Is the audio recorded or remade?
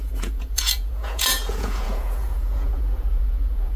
remade